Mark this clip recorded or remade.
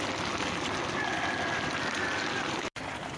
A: recorded